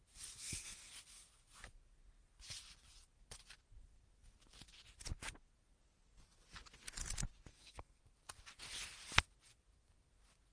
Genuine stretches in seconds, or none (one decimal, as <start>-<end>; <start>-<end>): 0.0-0.4; 0.9-7.5; 8.0-10.5